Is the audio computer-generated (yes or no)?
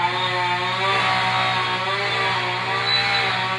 no